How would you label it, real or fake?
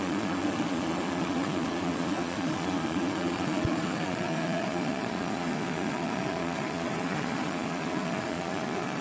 fake